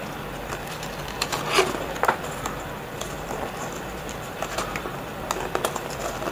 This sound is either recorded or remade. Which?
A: recorded